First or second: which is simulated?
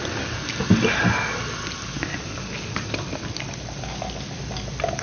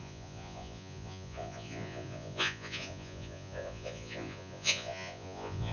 second